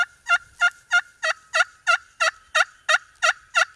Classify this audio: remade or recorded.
recorded